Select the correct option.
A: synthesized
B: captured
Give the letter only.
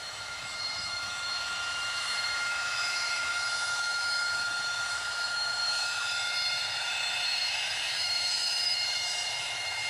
A